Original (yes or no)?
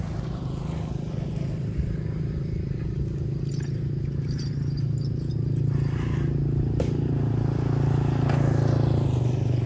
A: yes